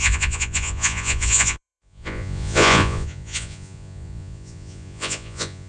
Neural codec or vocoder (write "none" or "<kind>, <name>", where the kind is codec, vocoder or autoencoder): vocoder, Vocos